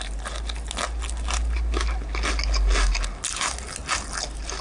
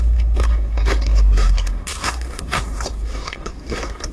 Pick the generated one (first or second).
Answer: second